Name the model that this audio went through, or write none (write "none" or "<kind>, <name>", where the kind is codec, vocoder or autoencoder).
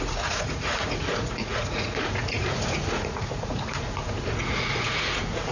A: vocoder, Vocos